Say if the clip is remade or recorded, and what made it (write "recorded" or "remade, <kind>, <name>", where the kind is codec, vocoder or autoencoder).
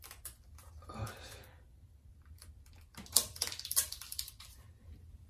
remade, vocoder, BigVGAN v2